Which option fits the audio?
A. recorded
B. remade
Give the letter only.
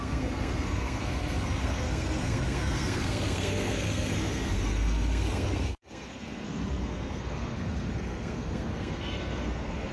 B